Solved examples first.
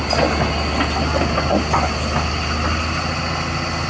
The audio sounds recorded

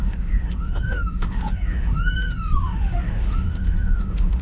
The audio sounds remade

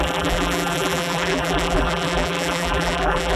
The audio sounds remade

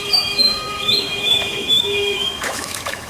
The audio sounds remade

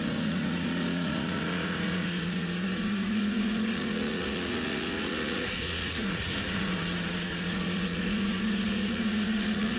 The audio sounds remade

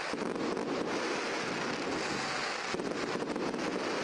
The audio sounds recorded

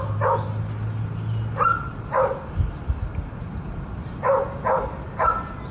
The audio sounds recorded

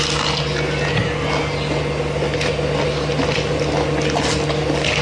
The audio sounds recorded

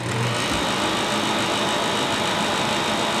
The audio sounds recorded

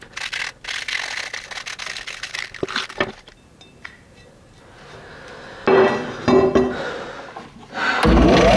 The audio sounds recorded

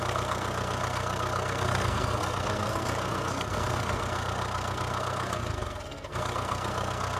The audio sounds remade